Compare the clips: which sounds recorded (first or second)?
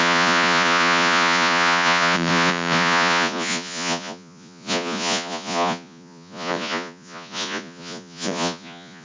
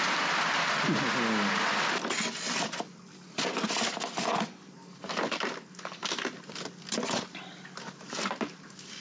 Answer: second